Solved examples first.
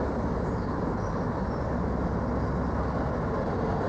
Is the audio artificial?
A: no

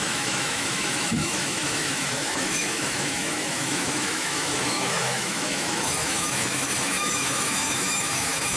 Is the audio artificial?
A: yes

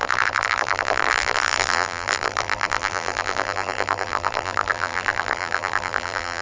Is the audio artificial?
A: yes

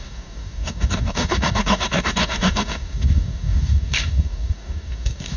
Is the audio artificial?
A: yes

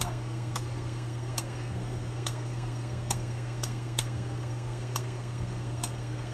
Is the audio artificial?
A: yes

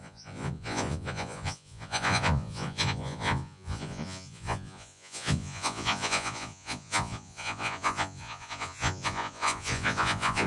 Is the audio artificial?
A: yes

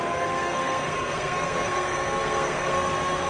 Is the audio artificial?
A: yes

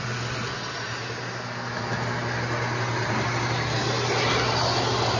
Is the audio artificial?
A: no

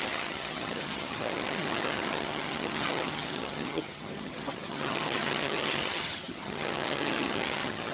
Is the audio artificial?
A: yes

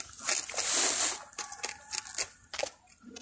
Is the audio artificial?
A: no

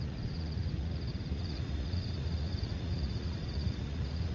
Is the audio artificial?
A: yes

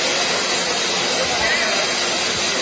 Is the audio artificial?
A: no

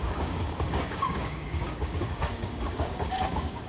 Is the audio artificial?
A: yes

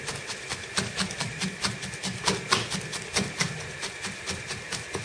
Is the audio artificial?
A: no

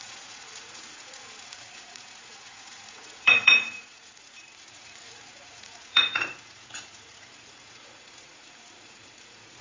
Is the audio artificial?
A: yes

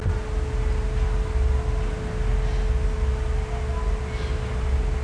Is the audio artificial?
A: no